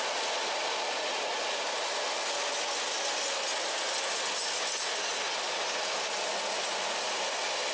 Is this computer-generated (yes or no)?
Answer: no